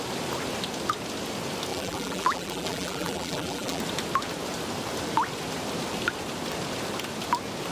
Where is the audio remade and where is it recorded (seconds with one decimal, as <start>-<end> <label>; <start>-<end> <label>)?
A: 0.0-1.7 recorded; 1.7-3.8 remade; 3.8-7.7 recorded